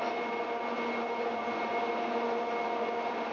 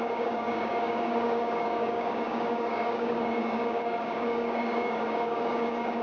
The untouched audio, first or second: first